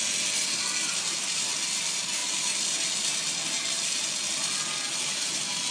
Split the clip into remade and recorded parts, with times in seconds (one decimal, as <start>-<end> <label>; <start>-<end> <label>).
0.0-5.7 recorded